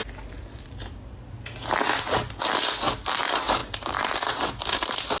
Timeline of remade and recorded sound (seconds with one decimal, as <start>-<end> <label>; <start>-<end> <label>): 0.0-5.2 recorded